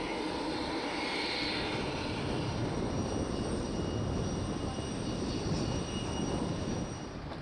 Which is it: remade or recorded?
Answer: recorded